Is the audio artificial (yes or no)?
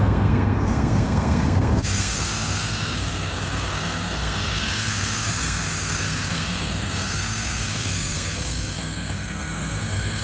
yes